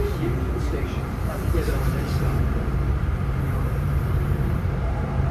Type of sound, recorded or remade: remade